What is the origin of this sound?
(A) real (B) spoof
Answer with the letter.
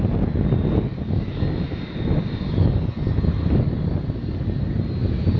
A